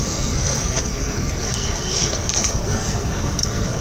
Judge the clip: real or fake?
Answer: fake